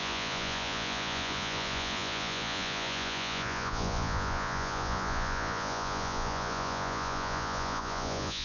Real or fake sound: fake